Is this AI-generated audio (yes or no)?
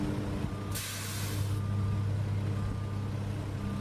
no